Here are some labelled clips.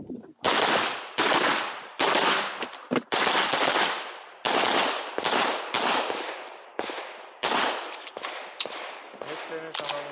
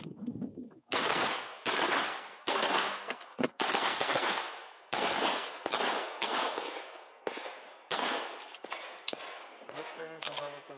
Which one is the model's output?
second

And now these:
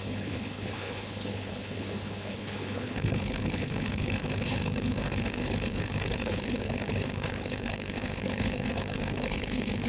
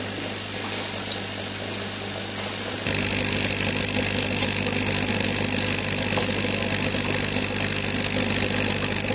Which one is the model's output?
first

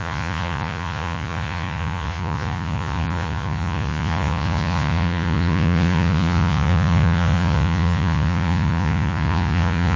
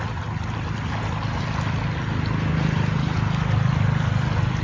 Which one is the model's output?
first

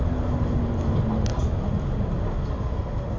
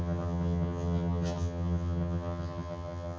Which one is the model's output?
second